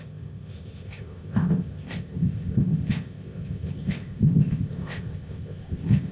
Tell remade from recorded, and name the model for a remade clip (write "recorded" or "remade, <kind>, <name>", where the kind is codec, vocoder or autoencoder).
remade, codec, ZipCodec